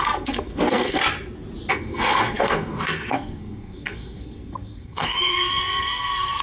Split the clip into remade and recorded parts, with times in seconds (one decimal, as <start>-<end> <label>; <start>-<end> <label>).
0.0-1.0 remade; 1.0-1.7 recorded; 1.7-6.4 remade